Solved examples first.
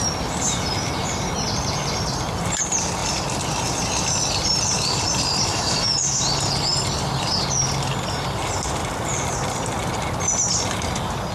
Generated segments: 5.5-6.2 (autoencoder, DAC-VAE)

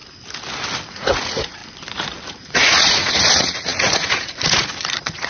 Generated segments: 0.9-1.6 (vocoder, Vocos); 2.3-5.3

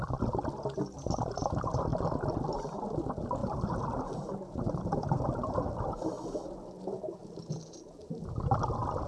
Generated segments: 3.4-6.1 (vocoder, BigVGAN v2); 7.2-8.4

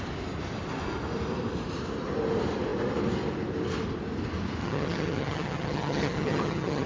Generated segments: 4.6-6.9 (vocoder, HiFi-GAN)

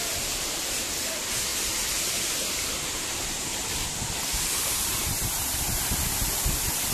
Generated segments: 1.5-5.6 (vocoder, BigVGAN v2)

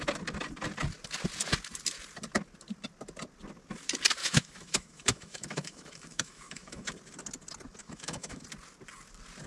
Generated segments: 4.2-6.9 (autoencoder, DAC-VAE); 7.8-8.4

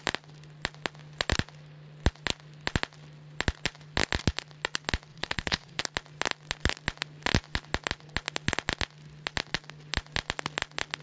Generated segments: 5.1-5.8 (vocoder, Vocos)